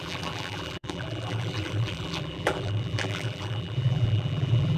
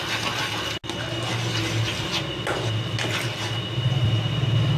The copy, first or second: first